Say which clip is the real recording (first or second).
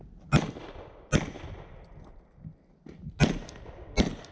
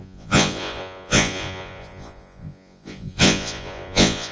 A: first